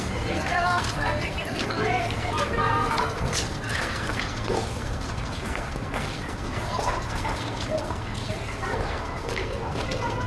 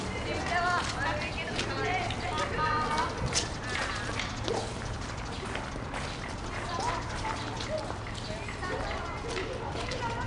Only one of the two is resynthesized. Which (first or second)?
first